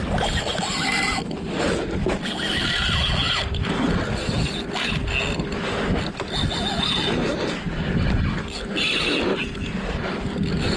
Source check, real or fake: real